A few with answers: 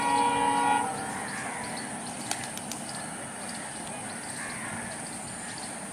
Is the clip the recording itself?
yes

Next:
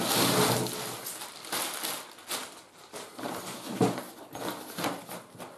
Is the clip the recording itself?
yes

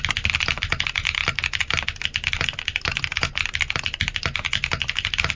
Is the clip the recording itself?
yes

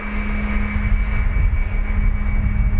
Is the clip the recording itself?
yes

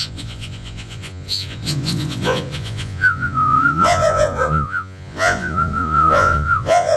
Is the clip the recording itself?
no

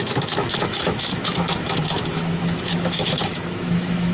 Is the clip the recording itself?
no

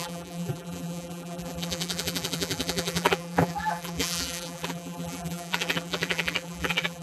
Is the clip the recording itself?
no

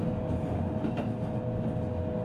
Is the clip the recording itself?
yes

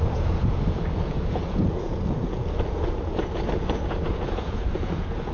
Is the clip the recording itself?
no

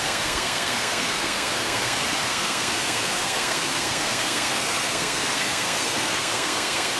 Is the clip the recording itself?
no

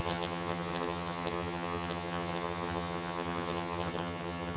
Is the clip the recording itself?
no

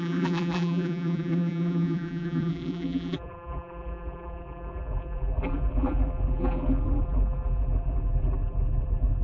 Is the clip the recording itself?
no